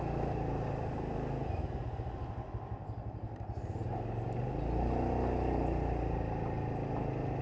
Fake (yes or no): no